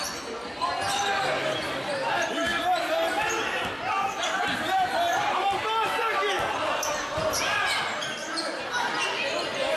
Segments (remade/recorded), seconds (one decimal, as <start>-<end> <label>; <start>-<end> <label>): 0.0-8.2 recorded; 8.2-8.9 remade; 8.9-9.8 recorded